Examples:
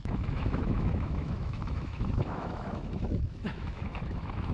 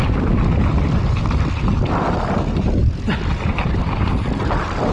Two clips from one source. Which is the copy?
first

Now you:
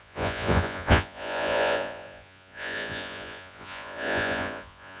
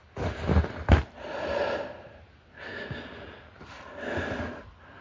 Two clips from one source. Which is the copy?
first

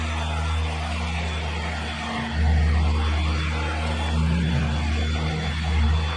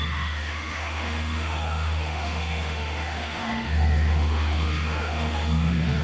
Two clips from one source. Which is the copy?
second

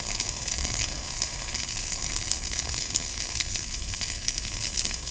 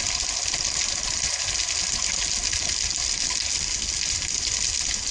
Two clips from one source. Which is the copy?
first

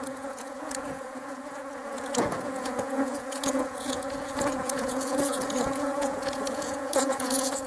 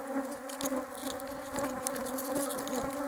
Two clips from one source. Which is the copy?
first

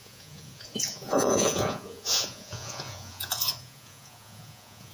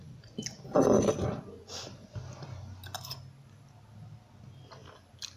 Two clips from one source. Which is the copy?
first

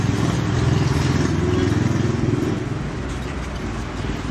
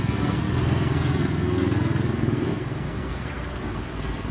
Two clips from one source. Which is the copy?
second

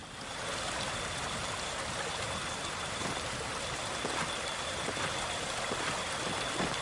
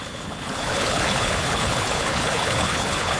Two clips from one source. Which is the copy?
second